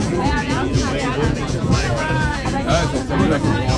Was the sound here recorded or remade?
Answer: remade